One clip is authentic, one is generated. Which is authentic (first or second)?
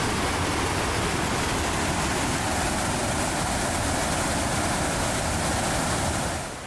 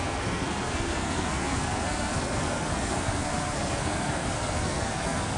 first